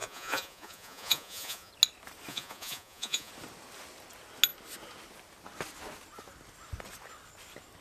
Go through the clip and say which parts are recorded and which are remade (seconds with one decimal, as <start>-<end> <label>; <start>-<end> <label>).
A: 0.0-1.7 remade; 1.7-2.3 recorded; 2.3-3.3 remade; 3.3-7.8 recorded